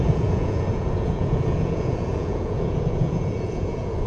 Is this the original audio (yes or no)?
no